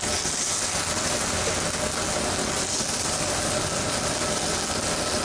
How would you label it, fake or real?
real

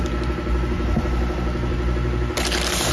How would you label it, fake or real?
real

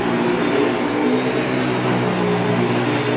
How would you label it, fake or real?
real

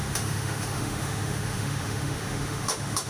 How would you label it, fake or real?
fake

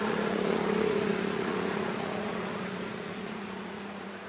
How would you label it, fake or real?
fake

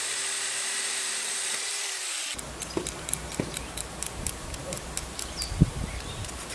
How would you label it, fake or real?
fake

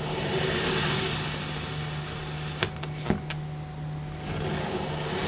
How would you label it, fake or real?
real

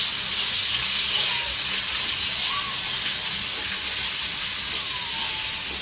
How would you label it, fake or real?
real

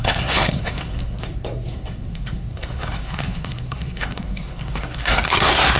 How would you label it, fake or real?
fake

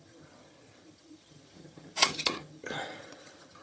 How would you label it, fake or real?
fake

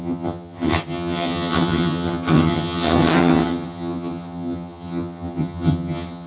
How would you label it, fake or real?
fake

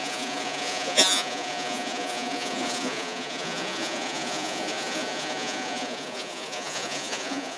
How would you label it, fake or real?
fake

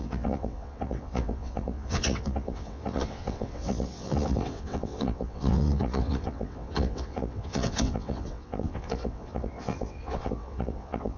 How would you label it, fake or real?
fake